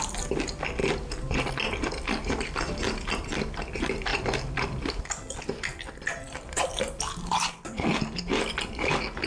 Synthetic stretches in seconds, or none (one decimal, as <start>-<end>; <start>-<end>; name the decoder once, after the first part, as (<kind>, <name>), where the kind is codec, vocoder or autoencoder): 0.8-1.5 (vocoder, BigVGAN v2); 4.1-8.2